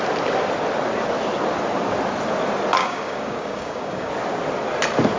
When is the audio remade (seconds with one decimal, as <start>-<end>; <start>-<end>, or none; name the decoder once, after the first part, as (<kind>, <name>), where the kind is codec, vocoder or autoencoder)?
2.8-4.1 (codec, DAC)